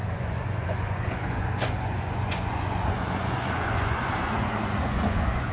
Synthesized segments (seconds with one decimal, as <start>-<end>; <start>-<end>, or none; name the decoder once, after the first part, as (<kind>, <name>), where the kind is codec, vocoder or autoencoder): 0.0-5.5 (vocoder, Vocos)